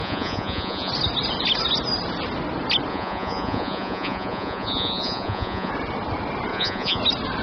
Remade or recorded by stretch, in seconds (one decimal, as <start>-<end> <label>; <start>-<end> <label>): 0.0-0.9 remade; 0.9-2.9 recorded; 2.9-5.7 remade; 5.7-6.5 recorded; 6.5-7.0 remade; 7.0-7.4 recorded